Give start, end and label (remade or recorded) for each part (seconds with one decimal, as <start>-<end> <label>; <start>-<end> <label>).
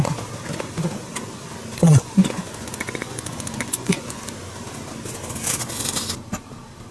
0.0-1.7 recorded; 1.7-4.2 remade; 4.2-6.9 recorded